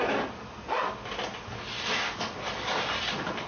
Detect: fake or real real